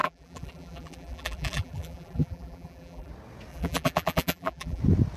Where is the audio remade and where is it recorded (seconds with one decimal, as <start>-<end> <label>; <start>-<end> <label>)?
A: 0.0-3.1 remade; 3.1-3.5 recorded; 3.5-4.8 remade; 4.8-5.2 recorded